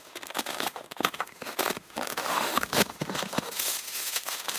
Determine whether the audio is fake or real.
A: fake